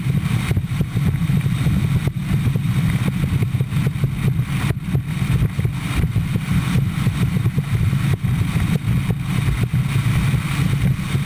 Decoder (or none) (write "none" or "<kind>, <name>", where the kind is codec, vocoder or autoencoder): none